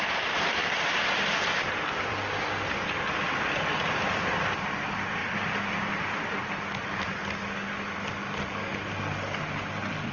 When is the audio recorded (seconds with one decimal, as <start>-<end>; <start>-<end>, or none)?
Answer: 0.0-10.1